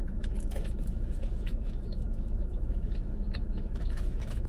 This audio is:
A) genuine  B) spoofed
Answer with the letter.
B